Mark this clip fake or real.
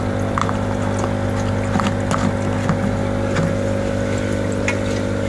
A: real